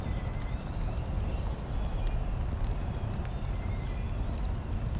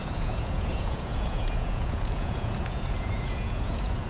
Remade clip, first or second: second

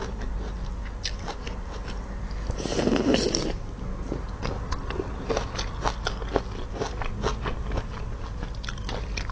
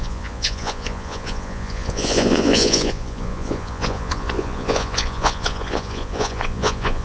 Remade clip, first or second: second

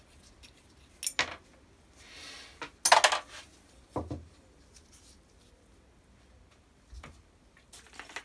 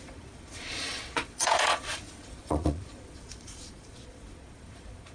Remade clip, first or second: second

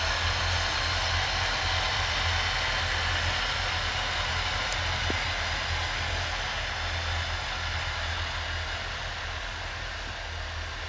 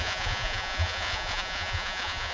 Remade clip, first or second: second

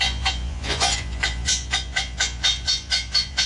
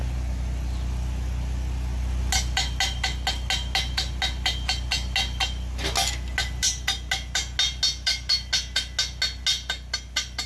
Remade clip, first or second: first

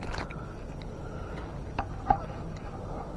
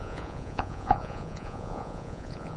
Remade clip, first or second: second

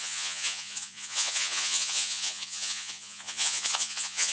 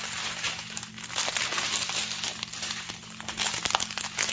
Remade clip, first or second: first